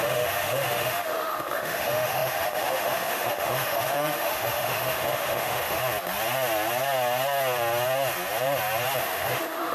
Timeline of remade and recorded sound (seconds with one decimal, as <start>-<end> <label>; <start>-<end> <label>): 0.0-5.8 remade; 5.8-9.0 recorded; 9.0-9.7 remade